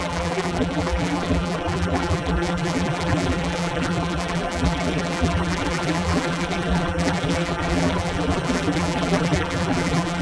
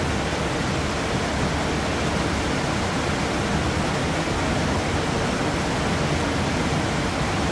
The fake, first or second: first